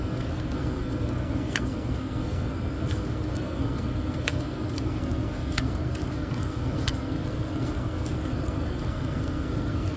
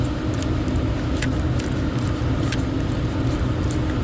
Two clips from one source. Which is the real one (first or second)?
second